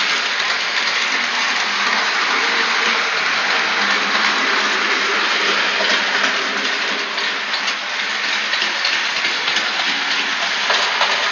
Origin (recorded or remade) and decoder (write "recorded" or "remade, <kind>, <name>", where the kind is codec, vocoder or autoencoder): recorded